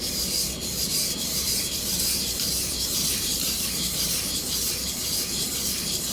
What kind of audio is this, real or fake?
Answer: fake